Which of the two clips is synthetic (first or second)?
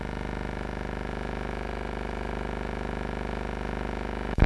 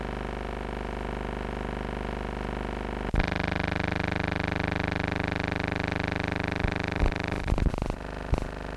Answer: first